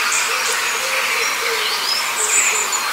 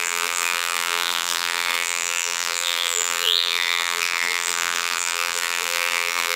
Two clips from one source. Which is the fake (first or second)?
second